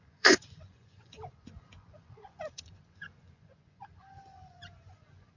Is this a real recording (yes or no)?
no